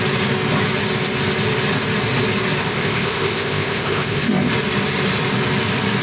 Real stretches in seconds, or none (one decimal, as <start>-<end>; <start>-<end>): 0.0-2.6; 4.5-6.0